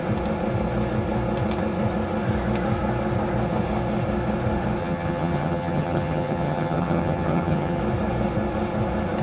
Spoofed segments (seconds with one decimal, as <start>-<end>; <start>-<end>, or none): 4.8-7.8